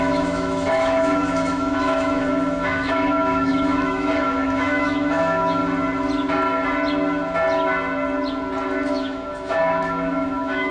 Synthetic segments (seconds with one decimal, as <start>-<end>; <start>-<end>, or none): 0.0-5.6; 8.9-10.7